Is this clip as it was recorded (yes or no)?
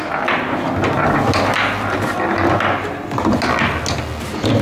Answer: yes